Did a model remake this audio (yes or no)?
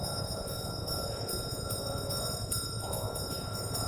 yes